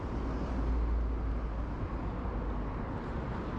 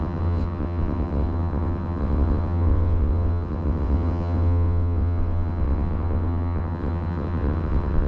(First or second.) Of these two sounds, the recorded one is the first